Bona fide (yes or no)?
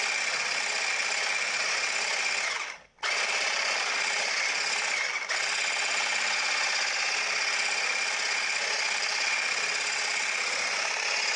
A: yes